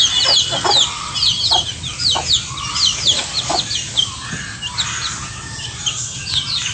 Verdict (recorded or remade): recorded